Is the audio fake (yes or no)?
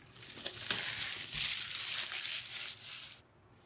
no